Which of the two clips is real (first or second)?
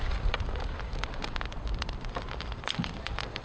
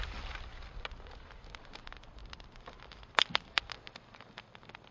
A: second